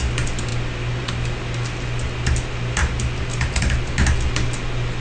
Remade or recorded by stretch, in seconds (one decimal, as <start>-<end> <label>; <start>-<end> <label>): 0.0-5.0 recorded